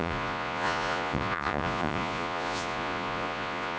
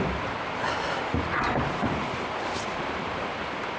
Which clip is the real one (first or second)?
second